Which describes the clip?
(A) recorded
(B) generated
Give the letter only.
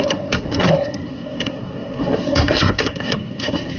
B